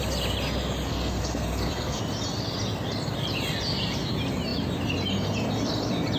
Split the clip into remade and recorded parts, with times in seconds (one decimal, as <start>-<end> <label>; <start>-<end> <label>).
0.0-0.9 recorded; 0.9-2.0 remade; 2.0-6.2 recorded